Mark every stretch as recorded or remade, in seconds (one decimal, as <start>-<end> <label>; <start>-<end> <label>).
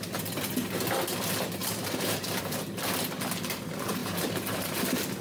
0.0-1.6 recorded; 1.6-2.7 remade; 2.7-4.0 recorded; 4.0-4.8 remade; 4.8-5.2 recorded